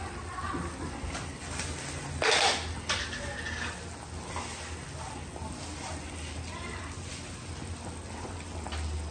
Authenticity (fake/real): real